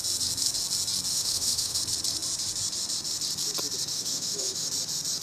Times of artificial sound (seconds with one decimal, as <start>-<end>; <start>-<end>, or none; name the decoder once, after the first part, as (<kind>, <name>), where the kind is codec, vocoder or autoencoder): 1.1-1.8 (autoencoder, DAC-VAE); 3.9-4.7